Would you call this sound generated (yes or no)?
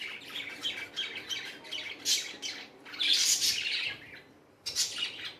no